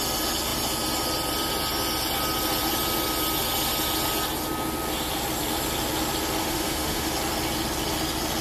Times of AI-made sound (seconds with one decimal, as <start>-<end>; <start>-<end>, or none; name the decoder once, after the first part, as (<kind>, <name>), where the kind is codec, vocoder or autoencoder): 6.4-7.1 (autoencoder, DAC-VAE)